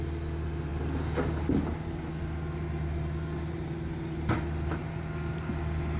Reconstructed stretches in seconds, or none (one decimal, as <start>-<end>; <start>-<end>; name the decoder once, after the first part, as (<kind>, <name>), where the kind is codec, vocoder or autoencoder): none